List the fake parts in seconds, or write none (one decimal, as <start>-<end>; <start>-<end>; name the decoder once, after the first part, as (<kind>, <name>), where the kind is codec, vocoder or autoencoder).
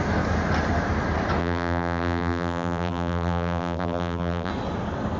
1.4-4.5 (vocoder, BigVGAN v2)